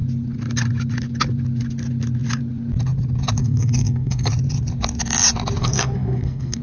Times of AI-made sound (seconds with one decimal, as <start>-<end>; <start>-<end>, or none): 3.4-4.3; 5.6-6.6